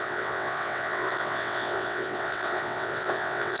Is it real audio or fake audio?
fake